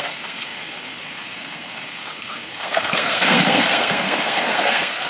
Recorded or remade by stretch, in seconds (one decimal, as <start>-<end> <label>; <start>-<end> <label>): 0.0-5.1 remade